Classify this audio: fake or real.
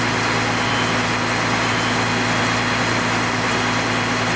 real